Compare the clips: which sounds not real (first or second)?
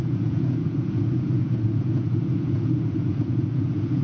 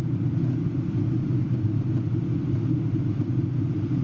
first